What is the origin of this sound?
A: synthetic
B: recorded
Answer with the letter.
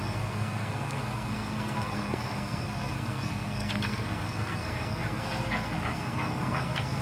A